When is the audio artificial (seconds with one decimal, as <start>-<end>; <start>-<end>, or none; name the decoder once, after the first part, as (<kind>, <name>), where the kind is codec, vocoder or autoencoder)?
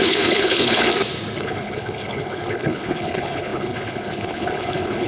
0.0-0.9 (codec, HILCodec); 1.4-5.1